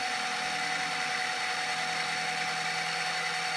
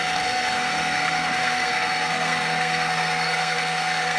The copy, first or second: second